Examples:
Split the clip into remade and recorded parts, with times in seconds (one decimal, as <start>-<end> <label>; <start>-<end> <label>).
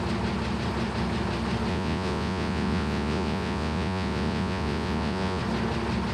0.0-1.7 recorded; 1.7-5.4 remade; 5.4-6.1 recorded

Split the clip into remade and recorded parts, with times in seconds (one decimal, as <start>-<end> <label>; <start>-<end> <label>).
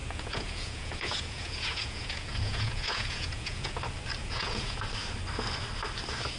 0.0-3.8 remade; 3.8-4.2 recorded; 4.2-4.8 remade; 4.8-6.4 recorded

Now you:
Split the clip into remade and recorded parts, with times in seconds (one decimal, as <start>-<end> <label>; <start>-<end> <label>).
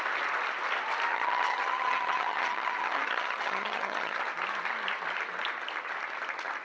0.0-1.1 recorded; 1.1-4.2 remade; 4.2-6.6 recorded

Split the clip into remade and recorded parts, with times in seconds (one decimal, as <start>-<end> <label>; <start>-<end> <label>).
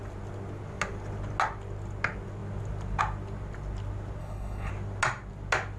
0.0-4.2 recorded; 4.2-4.7 remade; 4.7-5.8 recorded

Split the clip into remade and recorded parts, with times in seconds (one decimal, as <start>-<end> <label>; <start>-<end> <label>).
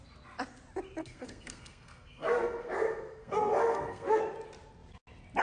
0.0-1.0 recorded; 1.0-4.2 remade; 4.2-5.4 recorded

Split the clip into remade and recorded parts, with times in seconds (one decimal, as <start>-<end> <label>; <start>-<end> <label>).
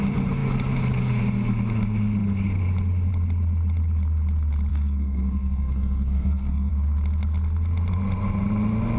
0.0-4.7 recorded; 4.7-6.7 remade; 6.7-9.0 recorded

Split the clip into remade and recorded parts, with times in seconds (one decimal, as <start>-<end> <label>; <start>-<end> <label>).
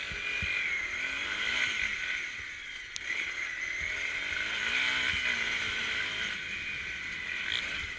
0.0-8.0 recorded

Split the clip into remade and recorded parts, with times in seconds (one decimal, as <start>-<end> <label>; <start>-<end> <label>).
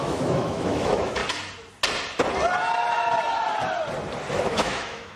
0.0-1.2 remade; 1.2-4.3 recorded; 4.3-5.2 remade